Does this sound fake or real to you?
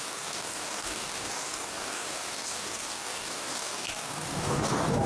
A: fake